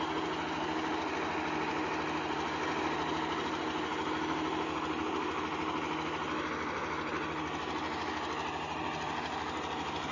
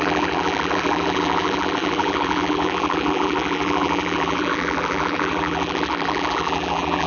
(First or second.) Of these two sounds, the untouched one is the first